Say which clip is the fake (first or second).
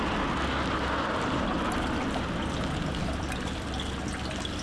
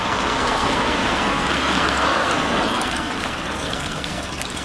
second